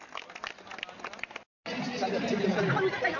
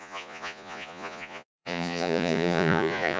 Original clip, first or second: first